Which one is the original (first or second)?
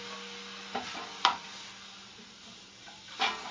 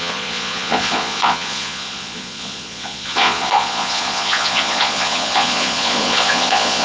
first